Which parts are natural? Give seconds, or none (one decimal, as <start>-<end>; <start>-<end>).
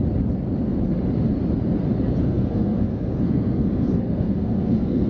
0.0-2.2